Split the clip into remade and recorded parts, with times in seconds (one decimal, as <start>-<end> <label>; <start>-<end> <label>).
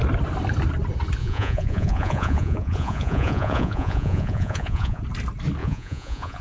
0.0-1.2 recorded; 1.2-5.0 remade; 5.0-5.6 recorded; 5.6-6.4 remade